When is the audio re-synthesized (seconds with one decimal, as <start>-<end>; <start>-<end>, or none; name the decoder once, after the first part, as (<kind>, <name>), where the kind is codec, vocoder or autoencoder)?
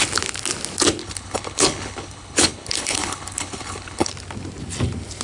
1.0-4.1 (codec, HILCodec)